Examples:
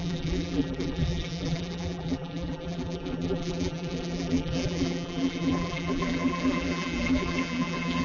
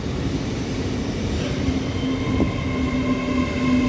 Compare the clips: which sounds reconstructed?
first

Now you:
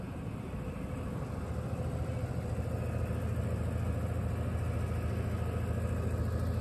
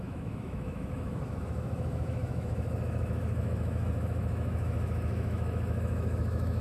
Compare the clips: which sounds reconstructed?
second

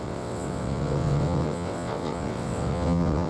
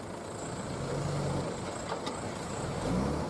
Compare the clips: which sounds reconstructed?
first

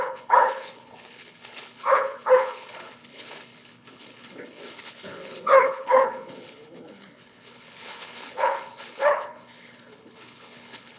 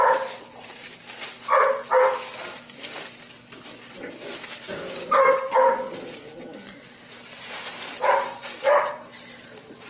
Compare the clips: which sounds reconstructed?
first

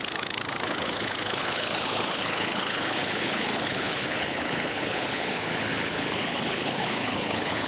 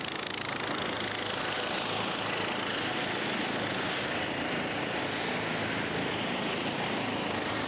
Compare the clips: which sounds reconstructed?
first